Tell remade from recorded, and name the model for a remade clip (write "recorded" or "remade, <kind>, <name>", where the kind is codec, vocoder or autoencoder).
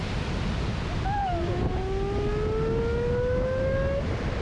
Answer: recorded